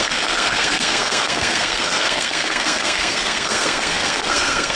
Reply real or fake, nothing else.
fake